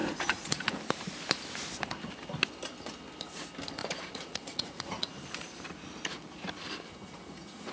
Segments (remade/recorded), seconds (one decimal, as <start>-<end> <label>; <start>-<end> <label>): 0.0-0.7 remade; 0.7-3.8 recorded; 3.8-5.1 remade; 5.1-6.9 recorded; 6.9-7.7 remade

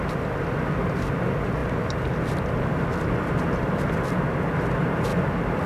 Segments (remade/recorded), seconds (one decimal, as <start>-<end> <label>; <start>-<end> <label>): 0.0-5.7 recorded

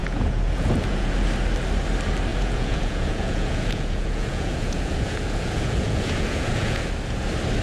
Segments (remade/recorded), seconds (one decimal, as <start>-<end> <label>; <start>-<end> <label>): 0.0-1.1 remade; 1.1-2.3 recorded; 2.3-6.9 remade; 6.9-7.6 recorded

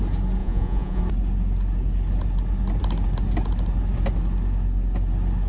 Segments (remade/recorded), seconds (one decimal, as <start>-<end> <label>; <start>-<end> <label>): 0.0-0.4 recorded; 0.4-1.0 remade; 1.0-5.5 recorded